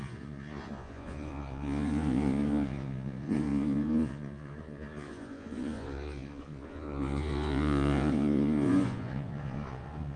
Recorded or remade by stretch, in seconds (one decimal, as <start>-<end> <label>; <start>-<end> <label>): 0.0-10.2 remade